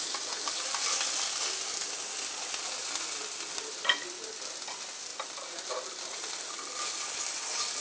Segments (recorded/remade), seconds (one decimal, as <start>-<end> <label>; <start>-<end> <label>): 0.0-7.8 recorded